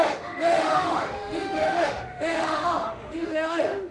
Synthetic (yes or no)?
yes